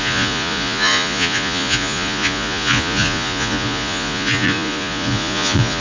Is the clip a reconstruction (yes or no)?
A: yes